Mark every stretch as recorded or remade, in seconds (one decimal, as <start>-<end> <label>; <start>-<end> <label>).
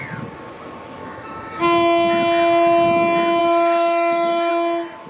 0.0-1.0 recorded; 1.0-1.6 remade; 1.6-3.4 recorded; 3.4-4.5 remade; 4.5-5.1 recorded